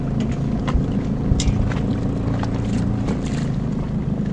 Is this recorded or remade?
recorded